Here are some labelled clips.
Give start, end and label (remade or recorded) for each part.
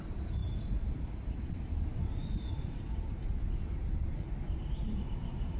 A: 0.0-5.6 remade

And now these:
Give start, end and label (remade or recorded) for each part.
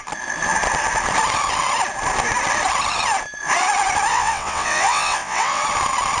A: 0.0-4.1 recorded; 4.1-5.6 remade; 5.6-6.2 recorded